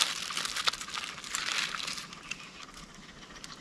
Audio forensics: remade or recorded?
recorded